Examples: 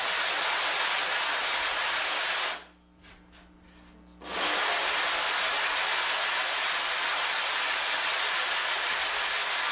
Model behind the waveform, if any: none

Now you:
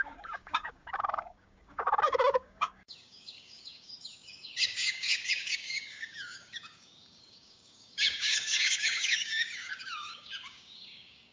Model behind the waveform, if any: codec, DAC